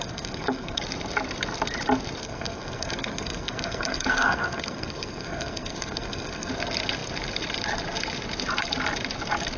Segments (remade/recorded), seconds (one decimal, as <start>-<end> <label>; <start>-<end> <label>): 0.0-0.8 remade; 0.8-2.2 recorded; 2.2-6.5 remade; 6.5-9.6 recorded